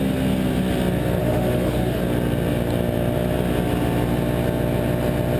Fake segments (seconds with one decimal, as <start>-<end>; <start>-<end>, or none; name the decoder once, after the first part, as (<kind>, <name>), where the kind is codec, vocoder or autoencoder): 1.2-2.0 (autoencoder, DAC-VAE)